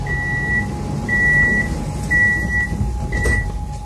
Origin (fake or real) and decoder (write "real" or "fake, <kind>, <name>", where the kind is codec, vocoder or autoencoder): real